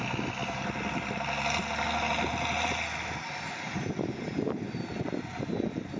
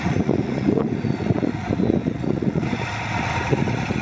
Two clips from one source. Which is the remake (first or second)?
second